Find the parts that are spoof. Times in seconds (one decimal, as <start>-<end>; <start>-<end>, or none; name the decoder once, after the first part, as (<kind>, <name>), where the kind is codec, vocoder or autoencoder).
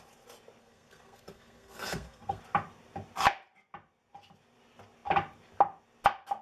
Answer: 0.6-2.4 (codec, SNAC)